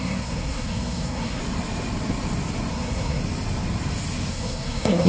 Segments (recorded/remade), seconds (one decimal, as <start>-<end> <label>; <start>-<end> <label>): 0.0-1.4 remade; 1.4-2.7 recorded; 2.7-3.2 remade; 3.2-4.3 recorded; 4.3-5.1 remade